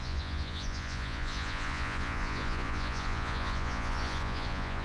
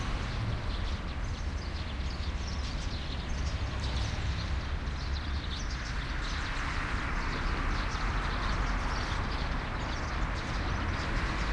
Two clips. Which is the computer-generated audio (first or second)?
first